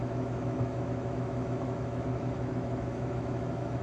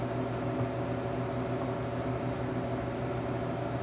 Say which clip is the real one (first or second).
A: second